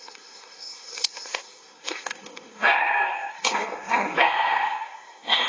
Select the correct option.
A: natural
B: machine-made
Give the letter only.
B